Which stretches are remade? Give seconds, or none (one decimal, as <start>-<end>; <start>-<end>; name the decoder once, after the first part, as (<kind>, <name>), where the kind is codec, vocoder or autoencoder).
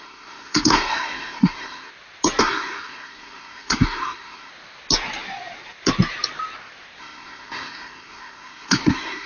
0.0-1.9 (codec, SNAC); 2.4-4.5; 7.0-9.3